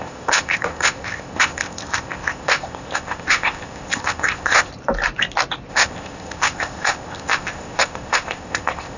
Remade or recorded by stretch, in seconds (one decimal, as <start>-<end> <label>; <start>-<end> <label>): 0.0-4.7 remade; 4.7-5.7 recorded; 5.7-9.0 remade